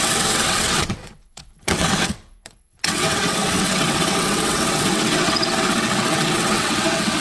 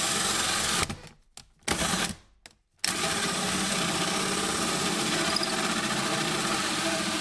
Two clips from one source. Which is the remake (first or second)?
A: first